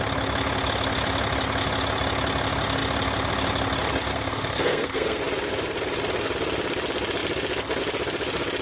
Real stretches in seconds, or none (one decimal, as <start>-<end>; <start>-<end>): 0.0-4.1; 5.2-8.6